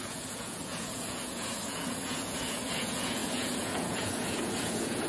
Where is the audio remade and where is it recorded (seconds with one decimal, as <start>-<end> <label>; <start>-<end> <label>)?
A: 0.0-5.1 remade

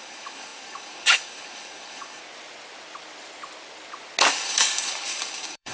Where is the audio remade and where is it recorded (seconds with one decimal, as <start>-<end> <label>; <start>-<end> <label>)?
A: 0.0-2.2 remade; 2.2-4.3 recorded; 4.3-5.7 remade

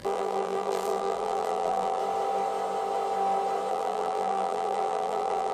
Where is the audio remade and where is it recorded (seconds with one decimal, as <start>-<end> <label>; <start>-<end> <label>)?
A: 0.0-2.0 remade; 2.0-3.7 recorded; 3.7-5.5 remade

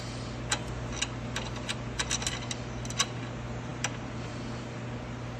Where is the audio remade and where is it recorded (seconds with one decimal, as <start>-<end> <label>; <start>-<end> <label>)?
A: 0.0-5.4 recorded

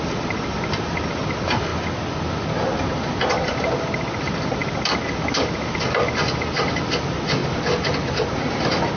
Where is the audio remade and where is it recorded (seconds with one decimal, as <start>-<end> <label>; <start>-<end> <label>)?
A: 0.0-9.0 recorded

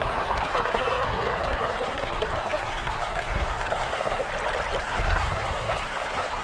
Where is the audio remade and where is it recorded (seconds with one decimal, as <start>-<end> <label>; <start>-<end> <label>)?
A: 0.0-4.3 remade; 4.3-4.8 recorded; 4.8-6.4 remade